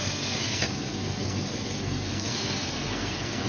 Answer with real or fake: fake